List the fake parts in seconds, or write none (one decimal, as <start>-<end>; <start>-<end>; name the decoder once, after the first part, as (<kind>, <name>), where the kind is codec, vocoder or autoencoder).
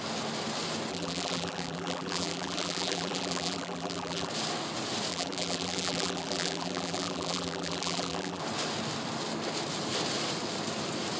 0.9-4.3 (vocoder, BigVGAN v2); 5.1-8.4